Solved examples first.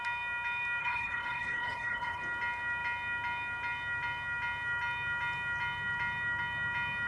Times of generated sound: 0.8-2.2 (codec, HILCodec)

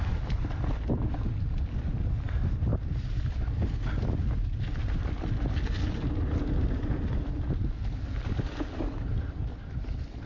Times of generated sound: none